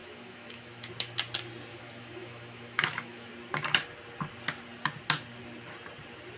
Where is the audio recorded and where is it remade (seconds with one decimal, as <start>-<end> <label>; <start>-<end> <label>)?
0.0-0.9 remade; 0.9-1.7 recorded; 1.7-3.3 remade; 3.3-6.4 recorded